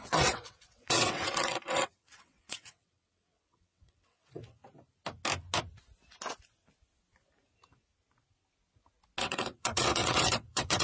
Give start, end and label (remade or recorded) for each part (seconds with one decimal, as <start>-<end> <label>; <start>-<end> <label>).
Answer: 0.0-4.6 remade; 4.6-9.2 recorded; 9.2-10.8 remade